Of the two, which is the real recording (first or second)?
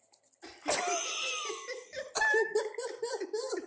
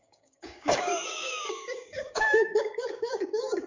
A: first